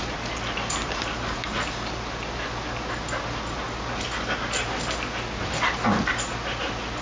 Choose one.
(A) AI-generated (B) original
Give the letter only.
B